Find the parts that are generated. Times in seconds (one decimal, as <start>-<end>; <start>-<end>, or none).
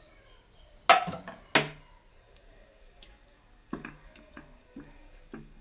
2.1-5.6